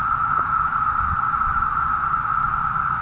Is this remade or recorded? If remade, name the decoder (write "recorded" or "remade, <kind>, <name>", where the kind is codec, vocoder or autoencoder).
remade, vocoder, Vocos